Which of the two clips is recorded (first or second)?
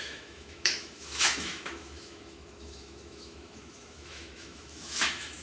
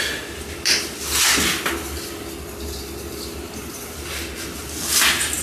second